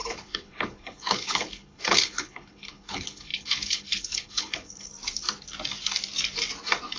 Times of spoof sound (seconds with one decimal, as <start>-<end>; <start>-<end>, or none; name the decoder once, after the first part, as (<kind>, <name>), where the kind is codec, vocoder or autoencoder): 0.0-4.9 (codec, HILCodec)